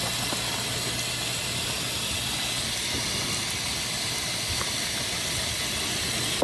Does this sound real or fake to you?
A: real